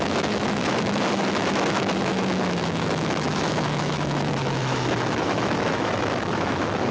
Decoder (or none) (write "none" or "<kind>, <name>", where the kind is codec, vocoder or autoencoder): autoencoder, DAC-VAE